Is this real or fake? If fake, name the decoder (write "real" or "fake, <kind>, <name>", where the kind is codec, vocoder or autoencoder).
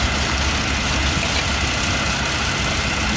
real